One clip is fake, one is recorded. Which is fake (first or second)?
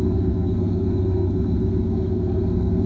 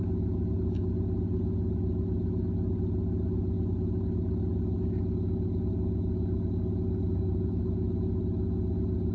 first